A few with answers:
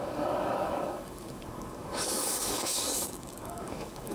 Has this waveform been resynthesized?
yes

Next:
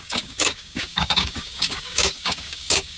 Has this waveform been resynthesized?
yes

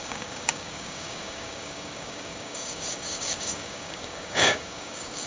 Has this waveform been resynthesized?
yes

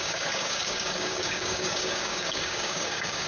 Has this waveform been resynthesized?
yes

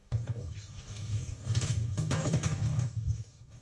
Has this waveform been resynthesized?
yes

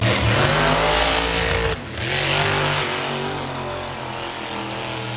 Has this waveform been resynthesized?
no